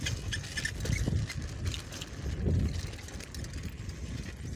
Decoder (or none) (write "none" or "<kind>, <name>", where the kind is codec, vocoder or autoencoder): none